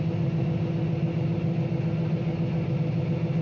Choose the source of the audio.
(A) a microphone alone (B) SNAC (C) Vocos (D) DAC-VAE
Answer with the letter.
A